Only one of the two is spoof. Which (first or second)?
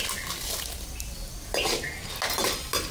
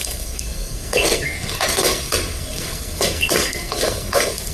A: second